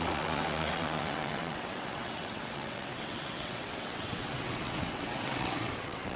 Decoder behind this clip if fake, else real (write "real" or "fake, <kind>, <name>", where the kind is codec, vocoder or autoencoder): fake, vocoder, WaveNeXt